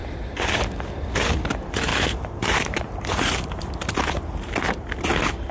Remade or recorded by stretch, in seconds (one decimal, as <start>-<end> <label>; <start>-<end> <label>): 0.0-1.9 recorded; 1.9-4.5 remade; 4.5-5.5 recorded